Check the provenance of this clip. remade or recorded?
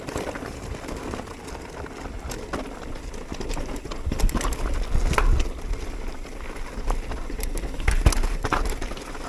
recorded